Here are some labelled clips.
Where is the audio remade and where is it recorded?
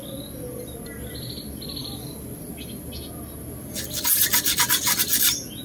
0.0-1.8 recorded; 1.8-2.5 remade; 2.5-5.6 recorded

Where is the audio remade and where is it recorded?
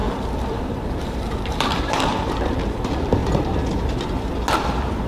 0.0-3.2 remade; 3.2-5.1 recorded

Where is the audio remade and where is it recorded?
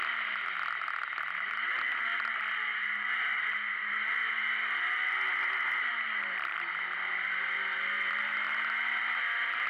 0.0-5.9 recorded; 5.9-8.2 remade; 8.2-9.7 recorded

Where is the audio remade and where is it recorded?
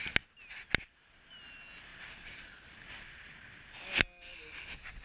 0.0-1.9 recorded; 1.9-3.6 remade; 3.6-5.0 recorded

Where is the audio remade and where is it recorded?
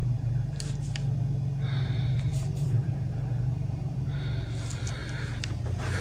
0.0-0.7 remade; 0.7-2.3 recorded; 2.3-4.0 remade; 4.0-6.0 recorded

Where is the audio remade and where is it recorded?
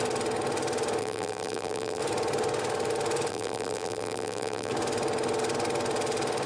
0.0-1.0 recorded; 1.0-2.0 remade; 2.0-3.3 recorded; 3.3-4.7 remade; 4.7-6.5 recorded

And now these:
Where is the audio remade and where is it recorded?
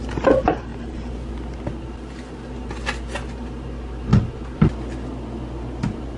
0.0-0.7 recorded; 0.7-1.3 remade; 1.3-6.2 recorded